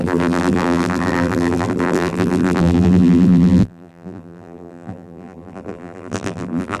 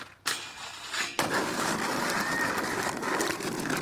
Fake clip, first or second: first